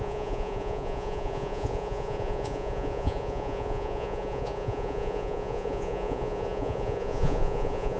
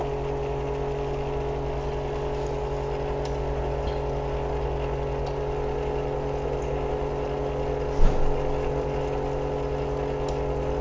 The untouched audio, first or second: second